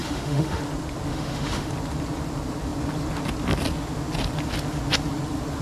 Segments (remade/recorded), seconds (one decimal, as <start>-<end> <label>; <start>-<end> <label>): 0.0-0.6 remade; 0.6-1.1 recorded; 1.1-1.7 remade; 1.7-5.6 recorded